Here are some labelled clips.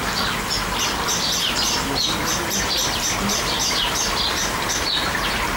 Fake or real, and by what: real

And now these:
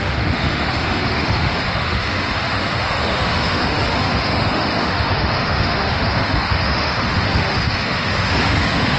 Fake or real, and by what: fake, autoencoder, DAC-VAE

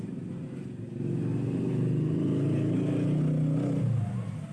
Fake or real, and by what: real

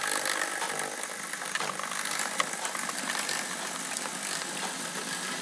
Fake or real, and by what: real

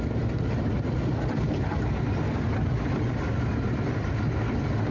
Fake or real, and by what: real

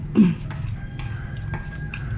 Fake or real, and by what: real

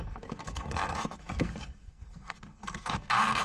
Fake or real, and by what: fake, codec, SNAC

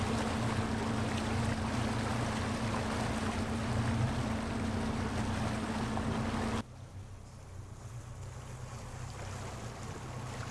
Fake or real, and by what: real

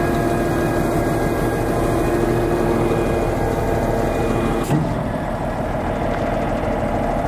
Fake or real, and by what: real